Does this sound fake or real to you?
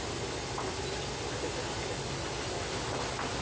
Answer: real